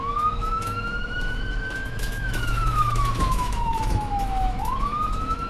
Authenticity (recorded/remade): remade